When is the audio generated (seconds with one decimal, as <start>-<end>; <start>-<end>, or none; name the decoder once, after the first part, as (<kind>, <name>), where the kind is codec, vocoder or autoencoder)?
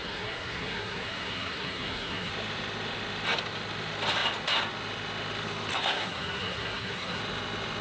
0.0-2.3 (codec, SNAC); 5.7-7.2